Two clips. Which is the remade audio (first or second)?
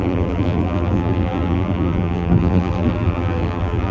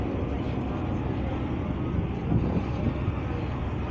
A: first